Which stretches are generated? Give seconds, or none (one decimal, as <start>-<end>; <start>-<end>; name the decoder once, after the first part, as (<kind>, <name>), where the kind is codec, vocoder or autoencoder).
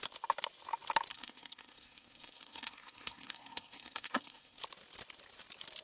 1.1-4.6 (codec, SNAC)